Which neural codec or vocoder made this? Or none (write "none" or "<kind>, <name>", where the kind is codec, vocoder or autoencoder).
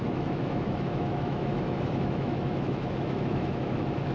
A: autoencoder, DAC-VAE